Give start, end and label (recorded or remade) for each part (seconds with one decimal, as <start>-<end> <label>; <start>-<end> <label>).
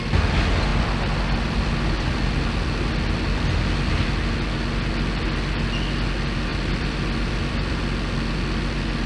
0.0-0.7 recorded; 0.7-2.3 remade; 2.3-6.5 recorded; 6.5-7.8 remade; 7.8-9.1 recorded